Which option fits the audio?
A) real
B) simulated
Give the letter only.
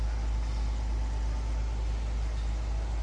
A